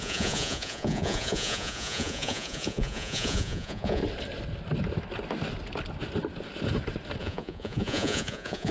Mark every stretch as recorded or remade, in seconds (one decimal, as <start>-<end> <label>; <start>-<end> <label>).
0.0-4.0 remade; 4.0-7.2 recorded; 7.2-8.7 remade